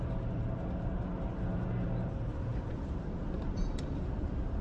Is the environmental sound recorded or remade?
recorded